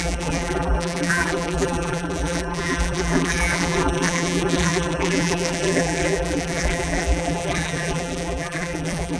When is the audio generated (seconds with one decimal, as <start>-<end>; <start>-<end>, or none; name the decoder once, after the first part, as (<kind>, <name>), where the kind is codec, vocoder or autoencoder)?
0.0-9.2 (vocoder, BigVGAN v2)